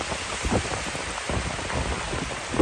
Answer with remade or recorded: recorded